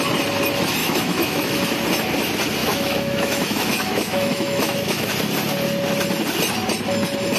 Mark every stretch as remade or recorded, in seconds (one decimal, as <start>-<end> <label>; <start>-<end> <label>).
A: 0.0-0.8 recorded; 0.8-1.6 remade; 1.6-2.6 recorded; 2.6-5.1 remade; 5.1-7.4 recorded

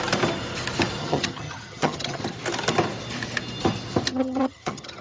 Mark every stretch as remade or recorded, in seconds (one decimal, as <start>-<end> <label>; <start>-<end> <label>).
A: 0.0-1.0 recorded; 1.0-2.2 remade; 2.2-4.1 recorded; 4.1-5.0 remade